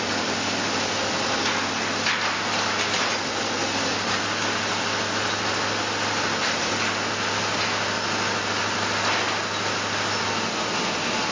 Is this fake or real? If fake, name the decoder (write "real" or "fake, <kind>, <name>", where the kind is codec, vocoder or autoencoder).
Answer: real